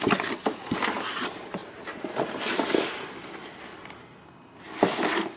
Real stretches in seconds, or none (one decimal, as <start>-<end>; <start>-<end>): 0.0-5.4